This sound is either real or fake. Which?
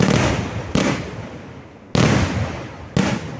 real